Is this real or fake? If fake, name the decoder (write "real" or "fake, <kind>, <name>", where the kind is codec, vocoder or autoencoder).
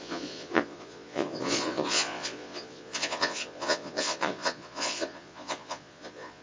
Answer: fake, vocoder, Vocos